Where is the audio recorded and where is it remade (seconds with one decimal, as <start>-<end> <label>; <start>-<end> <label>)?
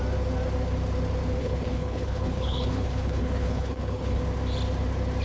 0.0-1.4 recorded; 1.4-4.2 remade; 4.2-5.2 recorded